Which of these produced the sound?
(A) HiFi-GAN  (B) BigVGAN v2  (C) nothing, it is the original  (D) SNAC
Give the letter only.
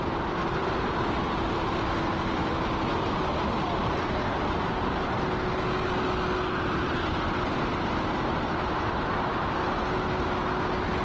C